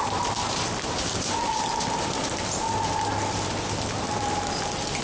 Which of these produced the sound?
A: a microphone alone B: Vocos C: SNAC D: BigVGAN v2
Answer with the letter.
A